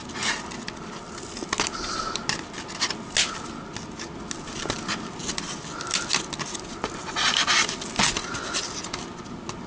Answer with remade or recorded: recorded